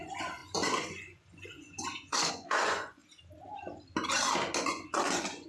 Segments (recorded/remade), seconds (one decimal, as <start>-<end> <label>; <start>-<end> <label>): 0.0-3.0 remade; 3.0-4.6 recorded; 4.6-5.5 remade